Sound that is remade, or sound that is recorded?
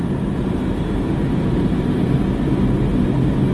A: recorded